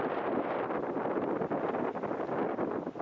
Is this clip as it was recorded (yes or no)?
yes